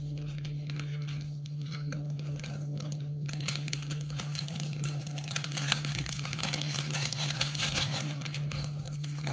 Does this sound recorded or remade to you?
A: remade